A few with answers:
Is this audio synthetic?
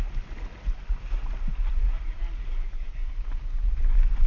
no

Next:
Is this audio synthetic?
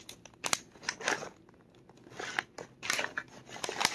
no